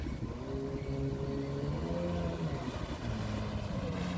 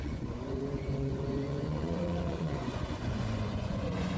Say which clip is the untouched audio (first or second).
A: first